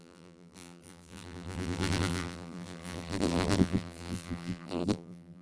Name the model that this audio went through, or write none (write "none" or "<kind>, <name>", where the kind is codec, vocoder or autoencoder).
vocoder, BigVGAN v2